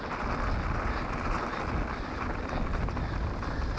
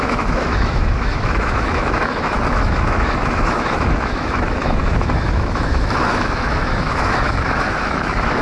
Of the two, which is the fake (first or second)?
second